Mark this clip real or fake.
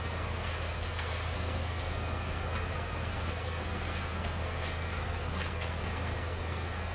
fake